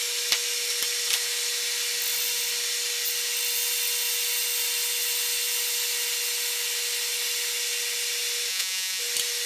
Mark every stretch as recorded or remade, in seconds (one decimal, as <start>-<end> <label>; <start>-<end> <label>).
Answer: 0.0-8.5 recorded; 8.5-9.0 remade; 9.0-9.5 recorded